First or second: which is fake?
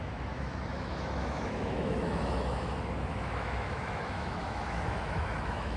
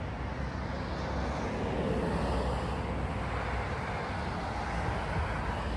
first